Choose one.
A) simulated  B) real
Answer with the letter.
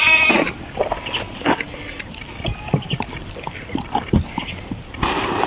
B